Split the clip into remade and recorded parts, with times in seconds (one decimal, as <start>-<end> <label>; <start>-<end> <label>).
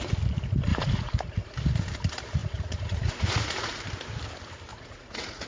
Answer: 0.0-0.7 recorded; 0.7-1.6 remade; 1.6-2.4 recorded; 2.4-3.8 remade; 3.8-4.7 recorded; 4.7-5.5 remade